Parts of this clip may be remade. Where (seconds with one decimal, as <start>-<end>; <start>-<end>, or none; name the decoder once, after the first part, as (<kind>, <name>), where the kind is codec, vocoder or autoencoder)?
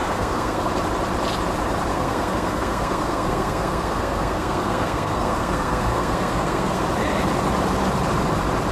0.0-0.7 (codec, SNAC); 1.9-6.8